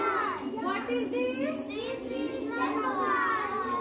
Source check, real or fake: real